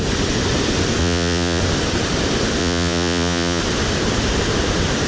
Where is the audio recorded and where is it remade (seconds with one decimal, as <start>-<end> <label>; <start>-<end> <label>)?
0.0-1.0 recorded; 1.0-1.6 remade; 1.6-2.6 recorded; 2.6-3.6 remade; 3.6-5.1 recorded